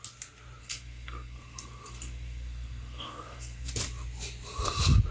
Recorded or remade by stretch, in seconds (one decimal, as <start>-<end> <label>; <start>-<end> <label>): 0.0-0.6 recorded; 0.6-3.7 remade; 3.7-5.1 recorded

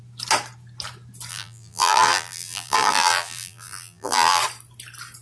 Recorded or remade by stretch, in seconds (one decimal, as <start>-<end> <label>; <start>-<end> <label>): 0.0-1.3 recorded; 1.3-4.4 remade; 4.4-5.2 recorded

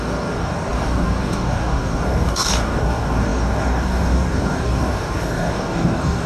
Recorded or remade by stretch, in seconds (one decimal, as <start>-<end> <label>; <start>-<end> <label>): 0.0-6.3 remade

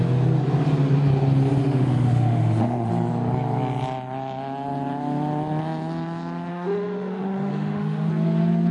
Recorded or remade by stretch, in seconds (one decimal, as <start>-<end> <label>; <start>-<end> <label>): 0.0-1.6 recorded; 1.6-2.9 remade; 2.9-6.5 recorded; 6.5-8.1 remade; 8.1-8.7 recorded

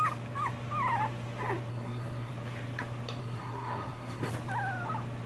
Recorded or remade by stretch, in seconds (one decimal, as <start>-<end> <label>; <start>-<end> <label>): 0.0-1.7 recorded; 1.7-2.3 remade; 2.3-3.2 recorded; 3.2-4.3 remade; 4.3-5.3 recorded

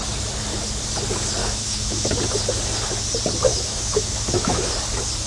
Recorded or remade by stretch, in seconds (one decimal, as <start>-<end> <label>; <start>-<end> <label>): 0.0-1.4 recorded; 1.4-2.1 remade; 2.1-3.5 recorded; 3.5-4.7 remade; 4.7-5.3 recorded

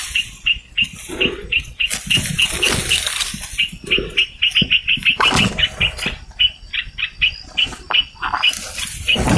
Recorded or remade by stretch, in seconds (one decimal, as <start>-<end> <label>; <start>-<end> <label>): 0.0-9.4 recorded

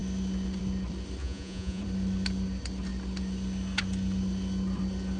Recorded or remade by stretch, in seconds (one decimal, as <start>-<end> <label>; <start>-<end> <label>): 0.0-1.2 recorded; 1.2-1.8 remade; 1.8-5.2 recorded